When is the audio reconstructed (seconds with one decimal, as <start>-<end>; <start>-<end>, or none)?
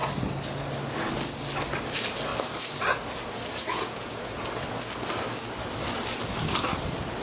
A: 3.7-4.5